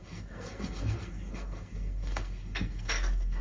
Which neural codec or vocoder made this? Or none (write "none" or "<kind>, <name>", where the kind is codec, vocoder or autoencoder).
codec, SNAC